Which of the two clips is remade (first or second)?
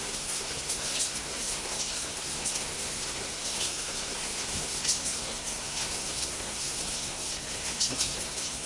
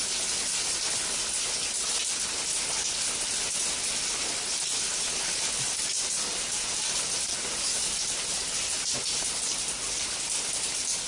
first